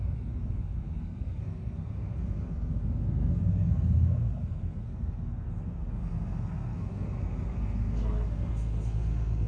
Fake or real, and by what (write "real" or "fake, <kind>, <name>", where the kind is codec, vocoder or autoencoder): fake, codec, SNAC